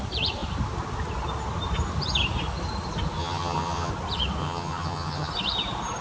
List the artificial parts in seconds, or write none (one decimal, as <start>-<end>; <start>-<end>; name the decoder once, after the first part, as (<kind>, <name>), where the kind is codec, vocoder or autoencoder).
3.2-3.9 (vocoder, HiFi-GAN); 4.4-5.3